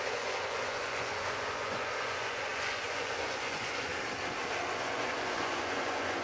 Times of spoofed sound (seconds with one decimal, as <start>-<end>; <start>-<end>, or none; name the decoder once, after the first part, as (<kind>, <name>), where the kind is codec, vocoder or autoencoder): 0.0-3.9 (vocoder, Vocos); 4.7-6.2